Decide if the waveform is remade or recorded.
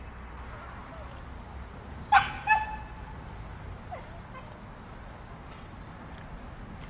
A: recorded